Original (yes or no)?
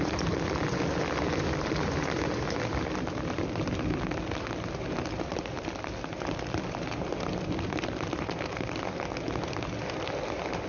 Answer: yes